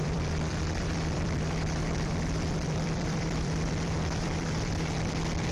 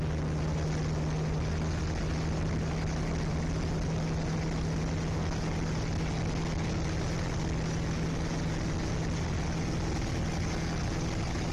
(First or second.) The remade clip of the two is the first